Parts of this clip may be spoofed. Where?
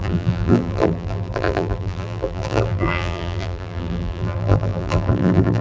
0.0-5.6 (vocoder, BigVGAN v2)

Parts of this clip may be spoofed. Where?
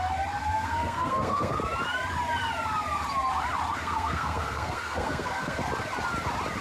0.4-1.6 (codec, SNAC); 3.7-5.6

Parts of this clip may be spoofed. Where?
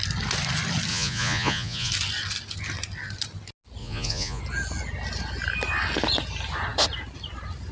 0.9-1.9 (vocoder, Vocos); 3.8-4.4